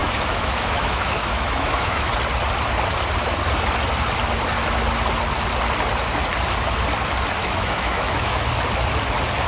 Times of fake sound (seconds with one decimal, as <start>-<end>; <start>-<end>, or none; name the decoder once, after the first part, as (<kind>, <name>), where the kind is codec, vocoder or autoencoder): 0.0-2.1 (autoencoder, DAC-VAE); 7.4-8.4